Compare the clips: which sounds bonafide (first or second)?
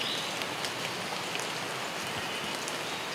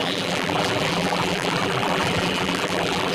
first